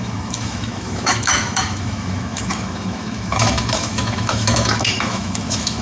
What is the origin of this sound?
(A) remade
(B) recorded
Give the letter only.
A